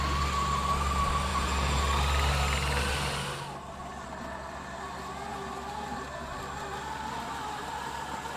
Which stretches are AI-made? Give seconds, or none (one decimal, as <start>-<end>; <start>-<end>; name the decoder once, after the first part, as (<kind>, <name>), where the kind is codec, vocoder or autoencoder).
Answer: 1.3-1.8 (vocoder, Vocos)